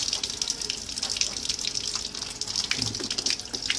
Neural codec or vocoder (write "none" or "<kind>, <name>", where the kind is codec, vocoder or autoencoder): none